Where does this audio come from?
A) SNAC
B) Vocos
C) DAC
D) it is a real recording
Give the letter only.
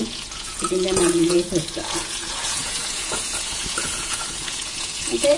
B